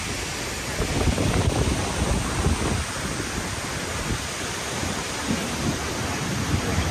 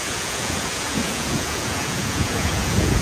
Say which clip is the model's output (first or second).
second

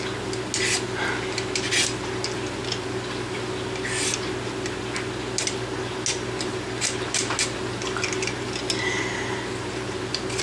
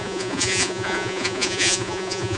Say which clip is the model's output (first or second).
second